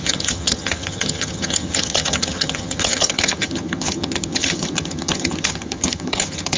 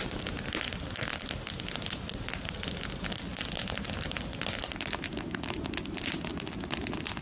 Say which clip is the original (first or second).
second